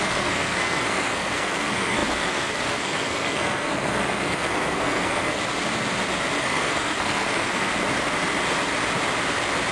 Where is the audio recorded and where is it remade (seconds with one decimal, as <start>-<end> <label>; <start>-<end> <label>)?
0.0-5.4 remade; 5.4-6.4 recorded; 6.4-7.7 remade; 7.7-9.7 recorded